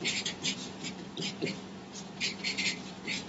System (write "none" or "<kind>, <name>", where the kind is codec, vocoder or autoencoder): vocoder, BigVGAN v2